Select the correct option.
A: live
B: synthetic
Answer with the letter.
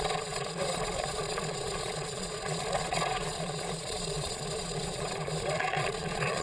B